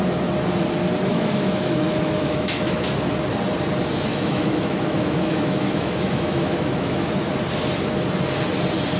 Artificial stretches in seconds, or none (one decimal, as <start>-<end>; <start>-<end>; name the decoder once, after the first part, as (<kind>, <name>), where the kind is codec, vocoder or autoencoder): 1.1-2.9 (autoencoder, DAC-VAE); 4.1-7.3